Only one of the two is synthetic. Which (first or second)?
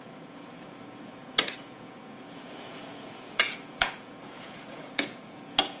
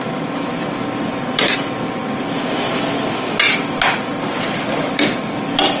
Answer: first